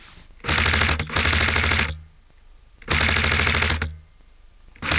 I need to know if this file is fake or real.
real